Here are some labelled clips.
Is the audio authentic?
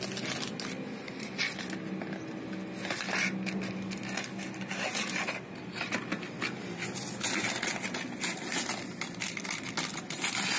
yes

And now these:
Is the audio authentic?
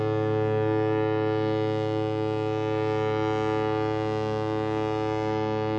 yes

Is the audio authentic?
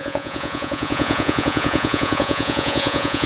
no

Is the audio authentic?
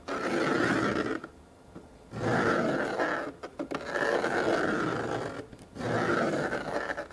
yes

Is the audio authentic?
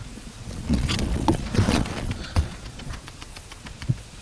no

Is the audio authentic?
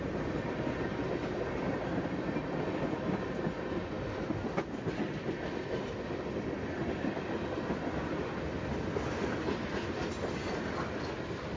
yes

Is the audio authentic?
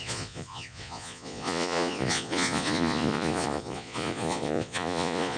no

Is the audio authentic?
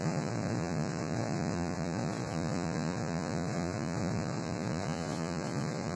no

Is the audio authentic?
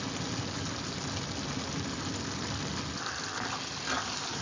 yes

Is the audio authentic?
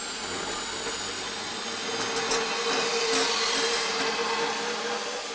yes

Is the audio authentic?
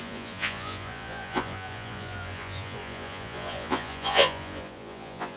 no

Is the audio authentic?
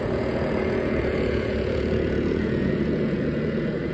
no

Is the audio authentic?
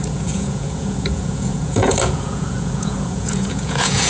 no